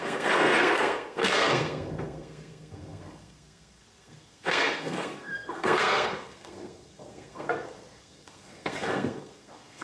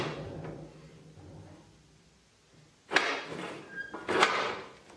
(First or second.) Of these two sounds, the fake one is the first